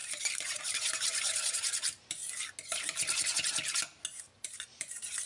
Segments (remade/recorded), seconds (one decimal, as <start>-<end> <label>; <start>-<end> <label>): 0.0-2.2 remade; 2.2-4.2 recorded; 4.2-5.3 remade